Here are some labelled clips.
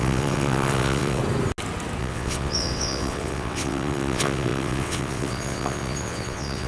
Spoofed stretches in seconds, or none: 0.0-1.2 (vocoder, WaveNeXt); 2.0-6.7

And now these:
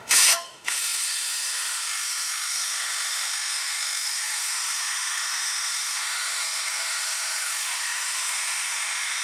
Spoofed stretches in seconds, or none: 0.0-9.2 (autoencoder, DAC-VAE)

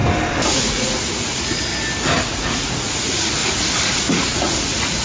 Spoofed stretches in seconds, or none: 0.5-1.7 (vocoder, Vocos); 2.2-3.4; 3.9-5.0